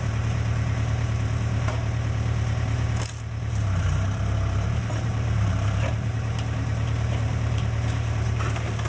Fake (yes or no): yes